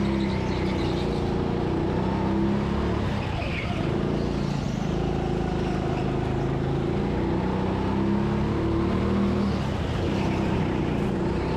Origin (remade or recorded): recorded